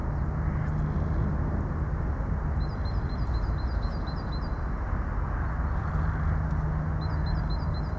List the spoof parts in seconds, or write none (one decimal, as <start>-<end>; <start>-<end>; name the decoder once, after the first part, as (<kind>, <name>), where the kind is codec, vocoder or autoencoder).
none